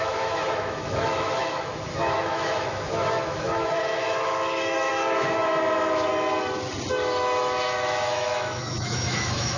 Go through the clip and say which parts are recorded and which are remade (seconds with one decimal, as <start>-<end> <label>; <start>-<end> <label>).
0.0-6.1 remade; 6.1-6.9 recorded; 6.9-9.6 remade